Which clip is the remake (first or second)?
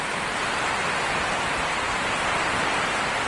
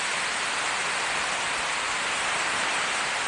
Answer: first